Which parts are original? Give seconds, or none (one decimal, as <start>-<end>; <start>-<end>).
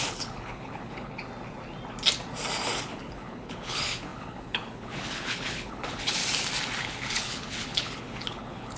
1.2-2.9; 6.2-6.8